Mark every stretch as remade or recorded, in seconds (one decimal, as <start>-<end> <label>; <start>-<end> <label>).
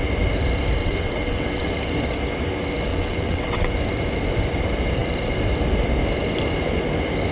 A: 0.0-0.8 recorded; 0.8-1.7 remade; 1.7-2.9 recorded; 2.9-3.7 remade; 3.7-7.3 recorded